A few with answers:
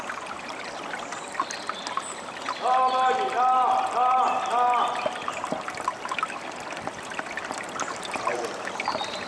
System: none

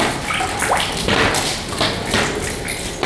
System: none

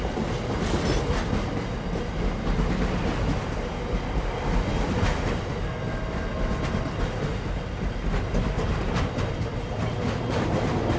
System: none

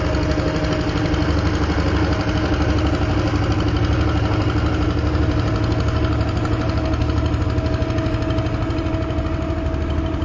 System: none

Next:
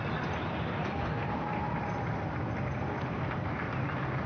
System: none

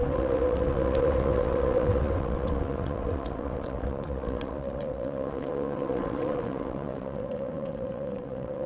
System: vocoder, WaveNeXt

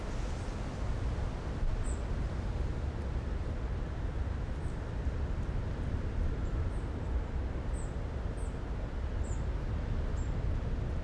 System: none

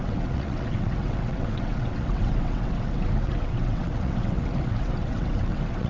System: vocoder, WaveNeXt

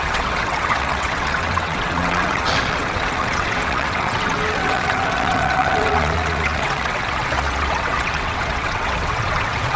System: vocoder, WaveNeXt